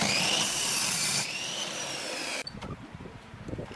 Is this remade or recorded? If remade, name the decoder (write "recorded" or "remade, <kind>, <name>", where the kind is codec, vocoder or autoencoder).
remade, vocoder, BigVGAN v2